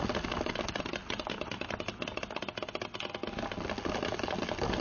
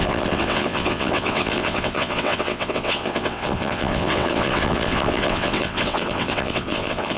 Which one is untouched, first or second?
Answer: first